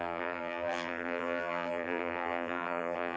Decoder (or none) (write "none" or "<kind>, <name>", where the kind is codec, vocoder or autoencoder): vocoder, BigVGAN v2